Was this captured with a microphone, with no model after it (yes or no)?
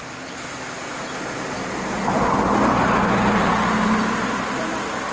yes